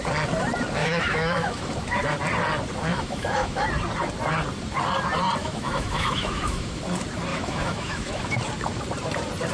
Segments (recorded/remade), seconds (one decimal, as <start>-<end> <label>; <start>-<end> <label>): 0.0-0.8 recorded; 0.8-1.7 remade; 1.7-2.9 recorded; 2.9-3.6 remade; 3.6-5.4 recorded; 5.4-6.8 remade; 6.8-7.3 recorded; 7.3-8.4 remade; 8.4-9.5 recorded